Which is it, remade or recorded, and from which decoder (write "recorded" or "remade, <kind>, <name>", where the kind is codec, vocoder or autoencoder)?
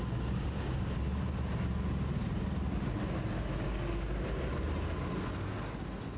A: recorded